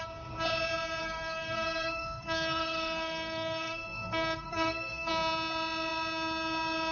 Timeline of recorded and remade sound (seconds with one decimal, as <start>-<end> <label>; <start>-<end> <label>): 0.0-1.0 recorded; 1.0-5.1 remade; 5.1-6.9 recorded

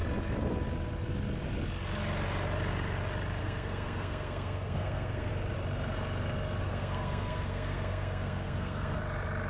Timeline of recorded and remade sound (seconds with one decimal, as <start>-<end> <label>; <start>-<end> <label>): 0.0-3.4 recorded; 3.4-5.3 remade; 5.3-6.6 recorded; 6.6-9.0 remade; 9.0-9.5 recorded

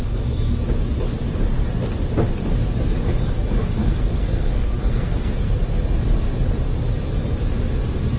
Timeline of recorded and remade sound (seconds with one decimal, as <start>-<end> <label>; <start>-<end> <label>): 0.0-3.8 recorded; 3.8-5.6 remade; 5.6-8.2 recorded